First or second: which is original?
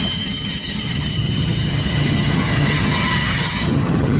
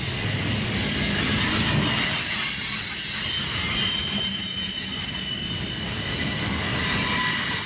second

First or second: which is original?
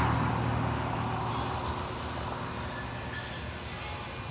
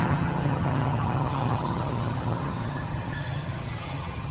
first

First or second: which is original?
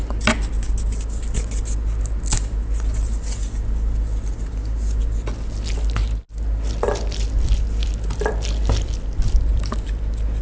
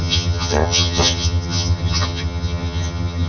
first